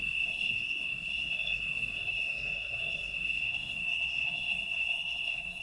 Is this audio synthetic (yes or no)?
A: yes